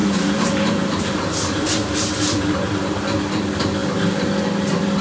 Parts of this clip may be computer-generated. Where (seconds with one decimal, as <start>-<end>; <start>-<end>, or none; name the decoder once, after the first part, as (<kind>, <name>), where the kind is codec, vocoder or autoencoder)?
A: 0.0-3.0 (vocoder, BigVGAN v2)